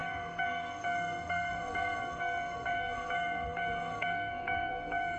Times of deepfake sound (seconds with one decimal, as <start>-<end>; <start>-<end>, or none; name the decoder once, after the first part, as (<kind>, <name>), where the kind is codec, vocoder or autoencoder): 0.0-5.2 (codec, SNAC)